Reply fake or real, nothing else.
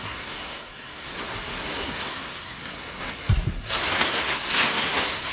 fake